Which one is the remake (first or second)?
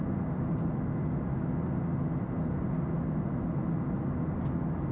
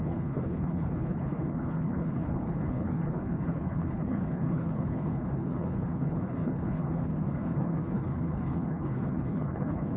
second